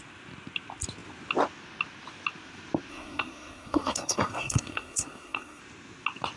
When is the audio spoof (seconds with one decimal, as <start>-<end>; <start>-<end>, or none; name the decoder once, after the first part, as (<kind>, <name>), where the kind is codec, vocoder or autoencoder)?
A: 2.9-5.6 (codec, SNAC)